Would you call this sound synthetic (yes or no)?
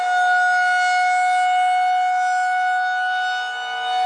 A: no